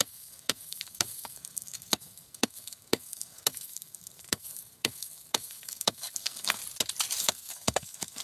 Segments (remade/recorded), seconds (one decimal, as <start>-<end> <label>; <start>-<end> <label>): 0.0-6.6 remade; 6.6-7.2 recorded; 7.2-8.2 remade